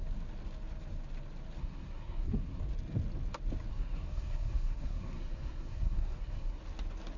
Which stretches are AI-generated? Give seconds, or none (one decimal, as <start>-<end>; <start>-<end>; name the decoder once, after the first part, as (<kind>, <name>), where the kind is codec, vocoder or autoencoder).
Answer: 1.6-2.6 (codec, SNAC); 3.7-6.6